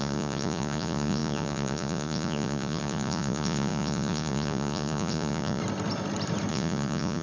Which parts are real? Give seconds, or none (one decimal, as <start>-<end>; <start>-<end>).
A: 5.6-6.5